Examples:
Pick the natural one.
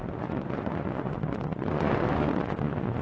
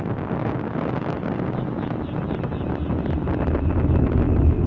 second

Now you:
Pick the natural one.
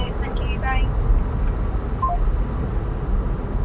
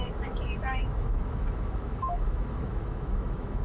first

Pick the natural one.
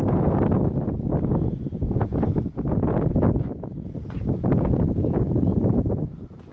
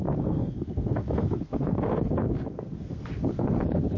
first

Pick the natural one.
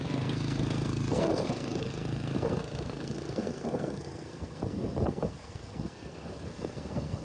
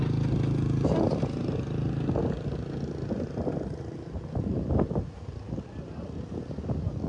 second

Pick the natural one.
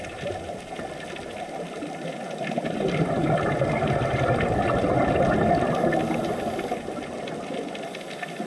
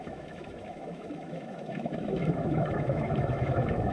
first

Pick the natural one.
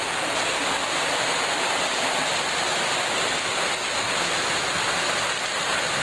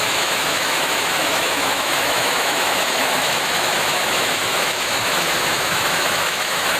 first